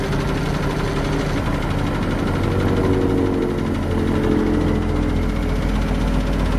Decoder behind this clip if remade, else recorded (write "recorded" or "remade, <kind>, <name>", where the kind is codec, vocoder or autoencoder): recorded